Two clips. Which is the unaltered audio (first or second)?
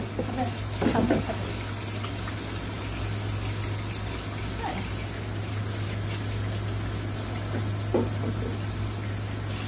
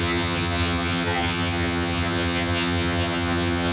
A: first